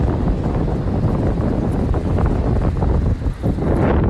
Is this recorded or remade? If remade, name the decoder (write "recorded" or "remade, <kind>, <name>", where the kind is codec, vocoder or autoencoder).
recorded